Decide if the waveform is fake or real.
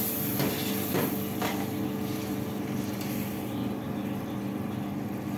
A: real